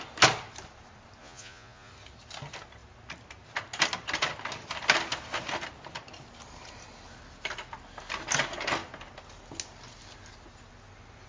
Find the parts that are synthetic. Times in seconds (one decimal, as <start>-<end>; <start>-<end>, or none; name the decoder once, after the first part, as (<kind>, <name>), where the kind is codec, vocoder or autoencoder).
1.2-1.9 (vocoder, Vocos)